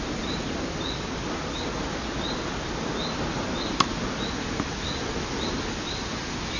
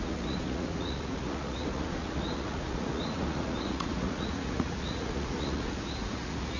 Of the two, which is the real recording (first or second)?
first